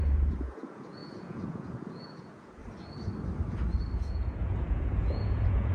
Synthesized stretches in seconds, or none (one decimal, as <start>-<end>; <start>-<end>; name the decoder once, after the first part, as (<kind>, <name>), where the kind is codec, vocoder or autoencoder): 0.0-2.6 (vocoder, Vocos); 4.0-5.7